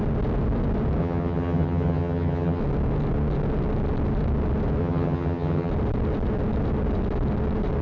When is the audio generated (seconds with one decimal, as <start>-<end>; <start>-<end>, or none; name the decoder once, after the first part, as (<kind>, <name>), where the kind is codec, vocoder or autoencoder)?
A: 1.0-2.6 (vocoder, HiFi-GAN); 4.8-5.7